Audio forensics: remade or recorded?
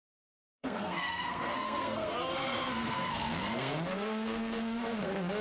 remade